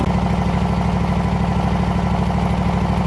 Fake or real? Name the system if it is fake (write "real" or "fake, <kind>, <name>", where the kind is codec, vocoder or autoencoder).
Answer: real